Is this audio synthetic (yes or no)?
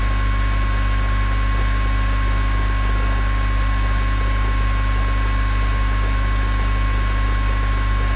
no